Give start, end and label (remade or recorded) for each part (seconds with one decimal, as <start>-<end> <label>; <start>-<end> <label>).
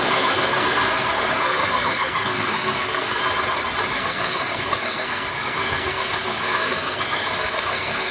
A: 0.0-3.2 remade; 3.2-3.9 recorded; 3.9-8.1 remade